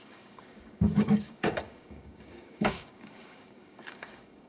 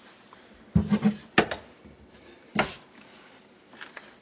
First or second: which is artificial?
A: first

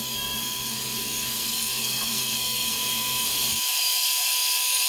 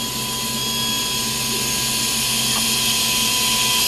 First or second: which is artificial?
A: first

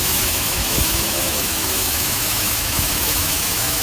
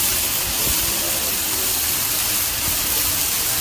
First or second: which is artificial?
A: first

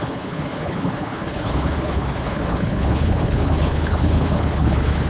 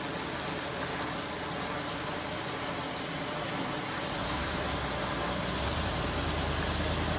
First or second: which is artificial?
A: first